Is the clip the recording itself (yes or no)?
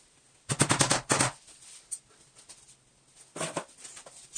yes